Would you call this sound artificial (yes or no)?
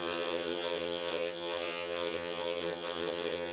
yes